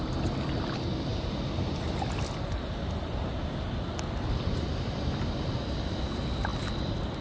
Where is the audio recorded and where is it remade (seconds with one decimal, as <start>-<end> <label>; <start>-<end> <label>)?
0.0-7.2 recorded